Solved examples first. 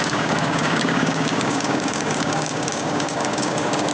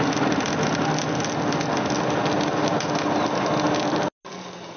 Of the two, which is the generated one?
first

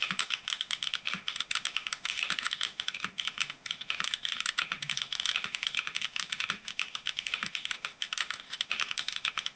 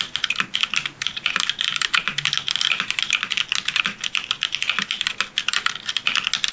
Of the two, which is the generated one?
first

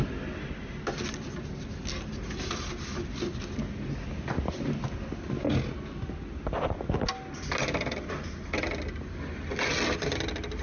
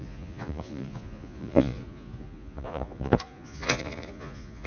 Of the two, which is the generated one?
second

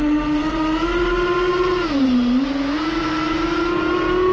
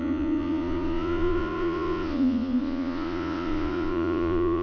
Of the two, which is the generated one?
second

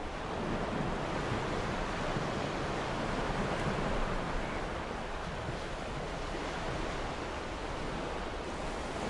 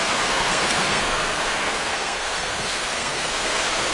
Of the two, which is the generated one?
second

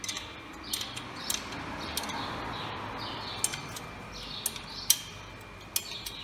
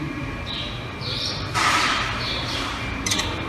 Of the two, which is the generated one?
second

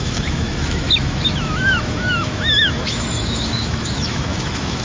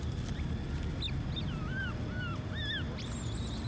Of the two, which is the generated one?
first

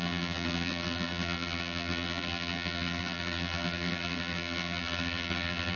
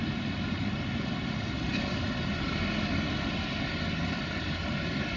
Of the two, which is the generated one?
first